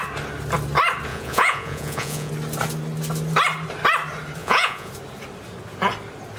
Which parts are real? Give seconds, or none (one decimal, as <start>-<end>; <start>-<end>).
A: 0.0-1.1; 2.3-4.4; 4.9-6.4